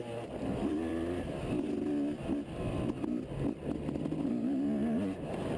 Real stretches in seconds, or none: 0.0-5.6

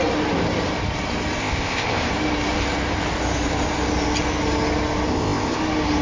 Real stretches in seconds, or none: 0.0-1.4; 2.1-5.1; 5.6-6.0

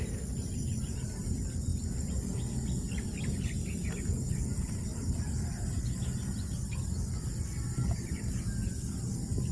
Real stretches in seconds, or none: 0.0-9.5

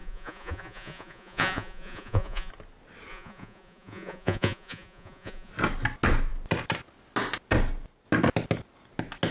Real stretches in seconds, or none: 2.5-3.1; 5.5-9.3

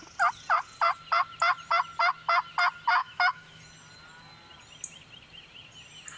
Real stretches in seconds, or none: 0.0-3.0; 3.6-6.2